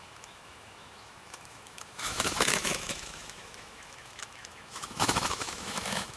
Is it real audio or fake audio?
fake